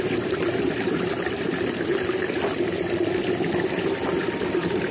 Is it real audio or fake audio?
real